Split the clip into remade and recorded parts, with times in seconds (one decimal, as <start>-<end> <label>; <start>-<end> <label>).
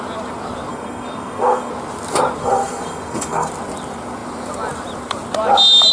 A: 0.0-0.7 recorded; 0.7-1.7 remade; 1.7-2.4 recorded; 2.4-3.5 remade; 3.5-5.9 recorded